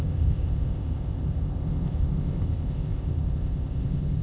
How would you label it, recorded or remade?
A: remade